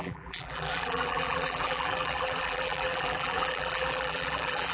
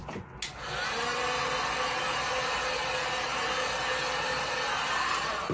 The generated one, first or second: first